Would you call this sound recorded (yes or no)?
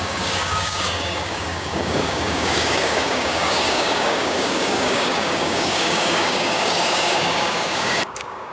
no